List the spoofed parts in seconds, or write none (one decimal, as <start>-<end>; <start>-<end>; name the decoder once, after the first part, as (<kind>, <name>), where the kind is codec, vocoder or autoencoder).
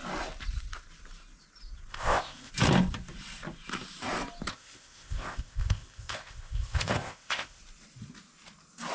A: 1.9-2.5 (codec, ZipCodec); 4.5-7.6